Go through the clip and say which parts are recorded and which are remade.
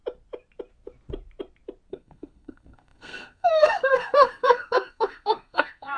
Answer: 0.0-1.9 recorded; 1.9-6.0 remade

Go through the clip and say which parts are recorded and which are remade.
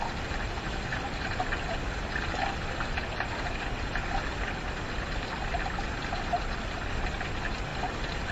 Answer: 0.0-8.3 recorded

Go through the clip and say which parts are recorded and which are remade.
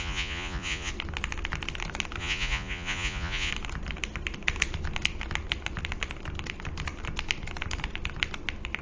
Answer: 0.0-0.9 remade; 0.9-2.2 recorded; 2.2-3.5 remade; 3.5-8.8 recorded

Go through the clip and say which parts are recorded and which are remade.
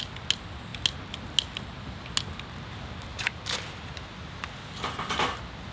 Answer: 0.0-3.1 recorded; 3.1-4.1 remade; 4.1-5.7 recorded